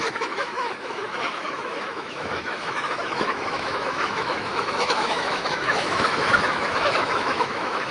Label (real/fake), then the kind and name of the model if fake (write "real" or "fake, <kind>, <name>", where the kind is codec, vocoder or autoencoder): fake, autoencoder, DAC-VAE